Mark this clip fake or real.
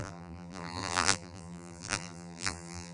fake